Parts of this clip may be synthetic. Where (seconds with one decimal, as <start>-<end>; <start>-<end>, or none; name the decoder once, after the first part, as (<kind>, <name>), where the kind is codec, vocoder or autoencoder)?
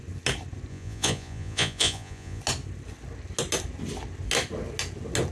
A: 0.7-2.4 (vocoder, Vocos)